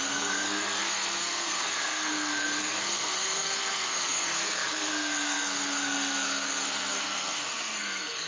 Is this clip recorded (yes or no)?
no